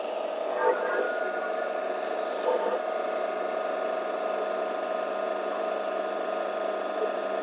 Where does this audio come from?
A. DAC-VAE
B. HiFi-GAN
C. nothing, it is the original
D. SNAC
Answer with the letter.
C